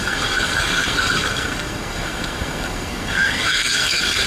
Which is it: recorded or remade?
remade